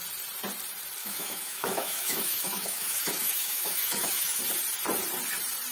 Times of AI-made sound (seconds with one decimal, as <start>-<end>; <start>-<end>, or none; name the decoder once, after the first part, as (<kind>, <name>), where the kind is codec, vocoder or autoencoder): 1.0-4.4 (autoencoder, DAC-VAE)